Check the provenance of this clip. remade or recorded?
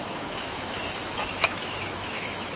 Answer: remade